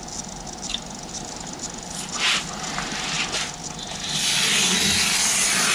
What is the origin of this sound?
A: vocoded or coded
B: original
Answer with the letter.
B